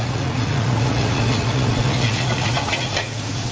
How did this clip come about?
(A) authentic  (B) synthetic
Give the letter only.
B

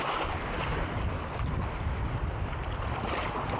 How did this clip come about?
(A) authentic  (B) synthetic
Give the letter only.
A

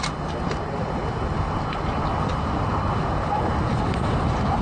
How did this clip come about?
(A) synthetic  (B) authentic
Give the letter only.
B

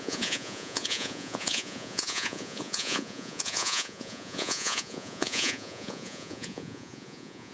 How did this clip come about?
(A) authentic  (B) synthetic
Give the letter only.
B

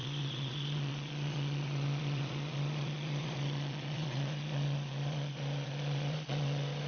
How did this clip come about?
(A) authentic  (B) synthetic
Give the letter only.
B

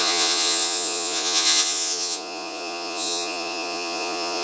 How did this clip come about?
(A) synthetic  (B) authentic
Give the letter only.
A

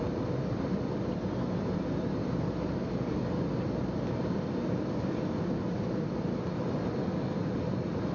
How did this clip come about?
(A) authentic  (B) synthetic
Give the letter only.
A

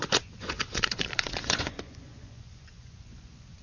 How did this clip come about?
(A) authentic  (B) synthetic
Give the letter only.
B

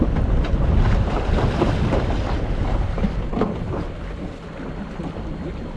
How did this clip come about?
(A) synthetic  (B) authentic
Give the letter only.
B